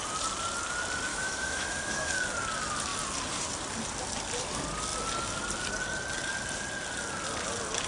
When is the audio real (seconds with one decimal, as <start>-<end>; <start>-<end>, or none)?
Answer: 0.0-1.1; 2.1-7.9